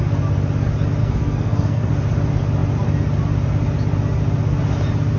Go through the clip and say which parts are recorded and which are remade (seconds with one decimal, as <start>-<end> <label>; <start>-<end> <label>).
0.0-1.0 recorded; 1.0-1.9 remade; 1.9-5.2 recorded